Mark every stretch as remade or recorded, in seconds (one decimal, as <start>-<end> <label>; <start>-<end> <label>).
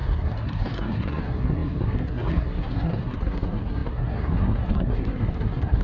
0.0-5.8 remade